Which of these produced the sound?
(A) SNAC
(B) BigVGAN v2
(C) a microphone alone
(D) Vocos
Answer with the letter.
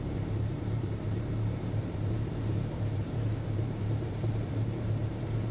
B